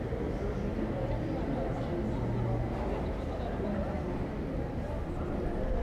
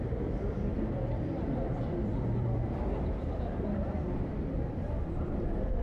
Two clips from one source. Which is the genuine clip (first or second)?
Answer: first